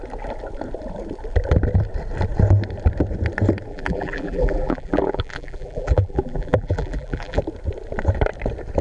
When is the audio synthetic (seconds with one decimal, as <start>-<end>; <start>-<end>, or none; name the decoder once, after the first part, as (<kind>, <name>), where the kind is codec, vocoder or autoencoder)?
3.7-7.4 (vocoder, BigVGAN v2)